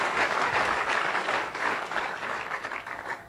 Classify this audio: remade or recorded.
remade